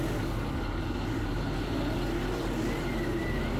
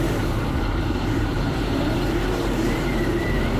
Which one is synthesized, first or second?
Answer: second